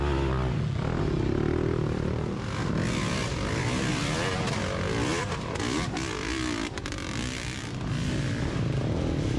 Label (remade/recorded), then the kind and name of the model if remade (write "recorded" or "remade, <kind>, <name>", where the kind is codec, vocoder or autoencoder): recorded